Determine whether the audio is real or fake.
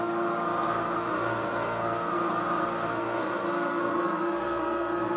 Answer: fake